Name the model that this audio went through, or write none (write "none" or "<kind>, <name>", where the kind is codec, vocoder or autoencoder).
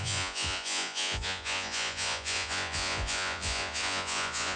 vocoder, Vocos